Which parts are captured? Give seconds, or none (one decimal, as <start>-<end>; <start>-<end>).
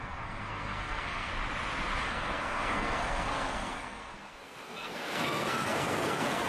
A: 1.3-2.0